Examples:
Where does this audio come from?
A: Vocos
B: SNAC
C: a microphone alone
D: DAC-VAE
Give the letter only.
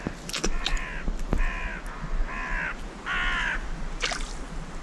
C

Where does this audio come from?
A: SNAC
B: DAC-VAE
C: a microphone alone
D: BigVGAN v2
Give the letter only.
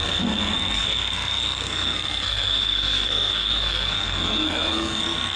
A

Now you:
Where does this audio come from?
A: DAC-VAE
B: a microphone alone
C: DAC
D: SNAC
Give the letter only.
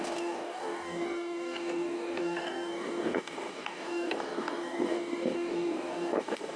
C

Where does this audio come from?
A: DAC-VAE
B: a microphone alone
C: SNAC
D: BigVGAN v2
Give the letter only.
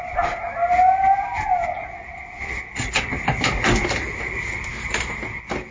B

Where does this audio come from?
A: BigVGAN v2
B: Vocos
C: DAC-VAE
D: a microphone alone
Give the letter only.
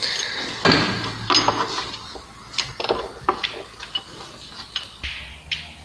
D